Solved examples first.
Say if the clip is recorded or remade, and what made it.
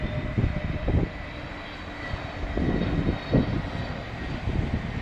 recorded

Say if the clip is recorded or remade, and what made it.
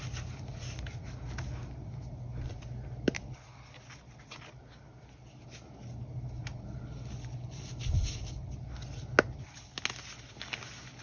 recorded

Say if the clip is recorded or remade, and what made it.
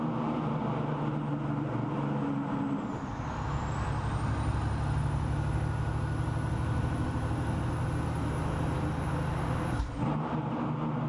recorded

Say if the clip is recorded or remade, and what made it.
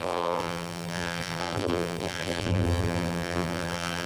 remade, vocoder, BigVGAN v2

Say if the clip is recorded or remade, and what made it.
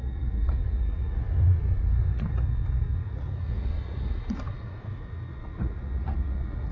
remade, vocoder, Vocos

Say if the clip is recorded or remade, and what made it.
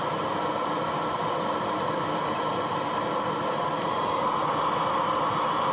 recorded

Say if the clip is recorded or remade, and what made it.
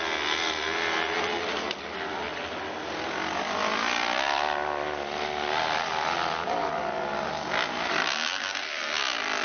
recorded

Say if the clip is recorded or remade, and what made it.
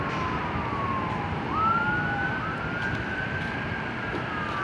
recorded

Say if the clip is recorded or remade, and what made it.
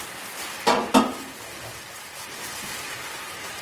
recorded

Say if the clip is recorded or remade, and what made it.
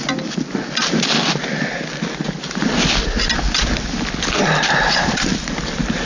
recorded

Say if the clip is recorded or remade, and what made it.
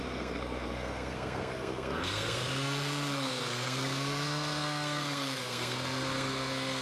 remade, codec, SNAC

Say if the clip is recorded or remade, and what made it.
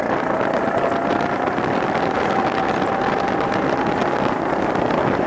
recorded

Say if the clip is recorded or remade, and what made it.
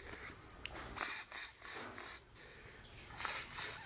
recorded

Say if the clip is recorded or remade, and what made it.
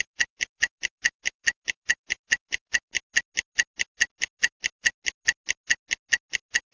recorded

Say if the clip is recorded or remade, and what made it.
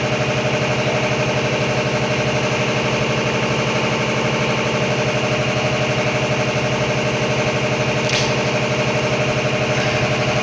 recorded